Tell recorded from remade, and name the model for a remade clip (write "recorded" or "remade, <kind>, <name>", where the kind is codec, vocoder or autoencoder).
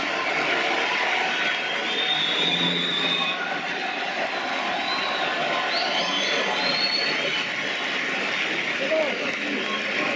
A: recorded